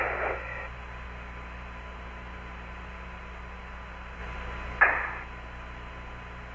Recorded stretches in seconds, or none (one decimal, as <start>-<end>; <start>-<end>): 0.0-6.5